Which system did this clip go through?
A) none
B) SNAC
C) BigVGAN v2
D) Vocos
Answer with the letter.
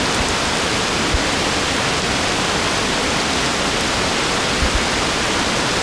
A